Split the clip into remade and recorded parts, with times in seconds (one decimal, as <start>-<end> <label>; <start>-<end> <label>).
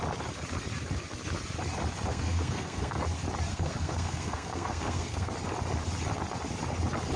0.0-2.1 recorded; 2.1-3.0 remade; 3.0-3.5 recorded; 3.5-5.3 remade; 5.3-7.2 recorded